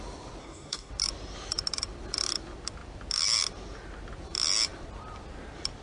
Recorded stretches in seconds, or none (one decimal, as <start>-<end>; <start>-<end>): 0.0-0.4; 0.9-5.8